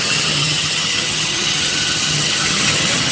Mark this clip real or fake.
fake